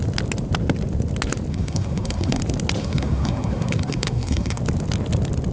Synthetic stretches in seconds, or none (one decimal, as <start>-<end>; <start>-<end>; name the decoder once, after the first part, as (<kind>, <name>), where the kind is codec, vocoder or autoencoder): 1.5-2.4 (codec, SNAC); 2.8-4.6